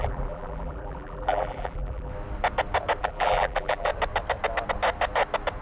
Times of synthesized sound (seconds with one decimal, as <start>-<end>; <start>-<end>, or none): 0.0-2.1; 3.0-3.9